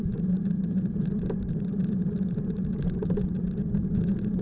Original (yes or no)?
no